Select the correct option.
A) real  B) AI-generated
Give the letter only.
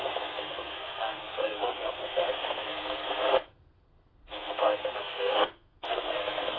B